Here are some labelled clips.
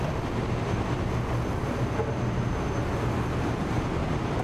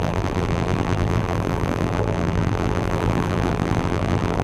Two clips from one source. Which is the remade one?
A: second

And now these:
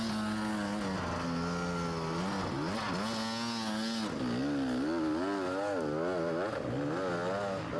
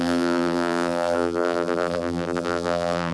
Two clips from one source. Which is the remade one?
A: second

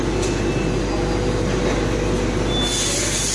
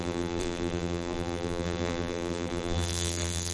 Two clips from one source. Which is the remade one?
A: second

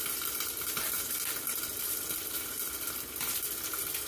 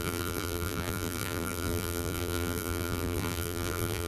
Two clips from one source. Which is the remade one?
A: second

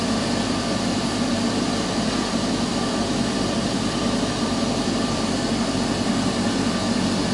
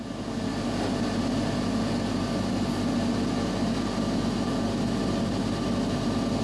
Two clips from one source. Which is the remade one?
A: first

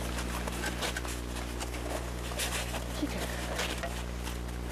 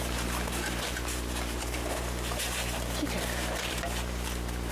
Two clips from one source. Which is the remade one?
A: second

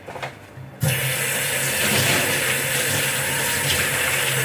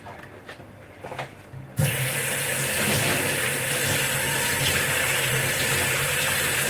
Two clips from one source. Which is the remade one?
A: second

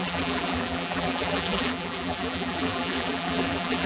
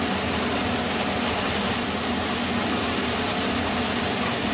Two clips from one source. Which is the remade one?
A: first